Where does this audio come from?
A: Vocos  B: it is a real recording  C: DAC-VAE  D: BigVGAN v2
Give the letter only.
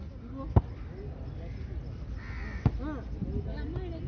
B